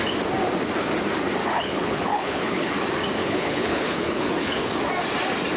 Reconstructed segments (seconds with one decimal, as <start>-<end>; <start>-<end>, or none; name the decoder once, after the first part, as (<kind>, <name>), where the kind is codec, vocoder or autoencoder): 1.4-2.7 (codec, HILCodec); 3.2-4.8